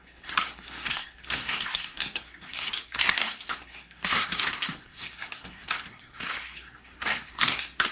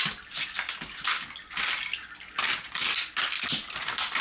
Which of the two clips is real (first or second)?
second